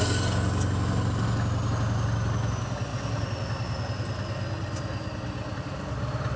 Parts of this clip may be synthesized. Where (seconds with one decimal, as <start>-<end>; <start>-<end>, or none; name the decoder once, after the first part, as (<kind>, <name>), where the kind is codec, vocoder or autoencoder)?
none